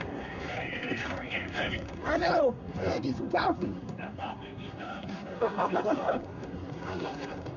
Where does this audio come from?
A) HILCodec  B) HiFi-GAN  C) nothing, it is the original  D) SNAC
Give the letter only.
D